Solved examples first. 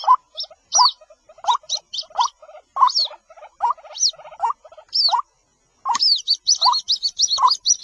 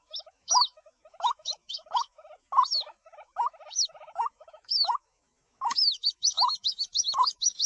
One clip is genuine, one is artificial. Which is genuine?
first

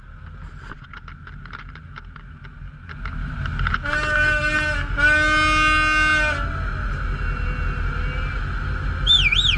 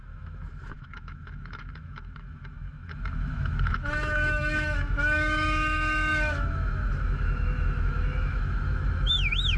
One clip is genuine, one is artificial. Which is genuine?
first